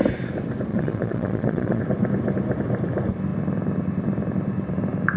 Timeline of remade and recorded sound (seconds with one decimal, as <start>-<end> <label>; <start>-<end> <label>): 0.0-0.7 recorded; 0.7-1.8 remade; 1.8-5.2 recorded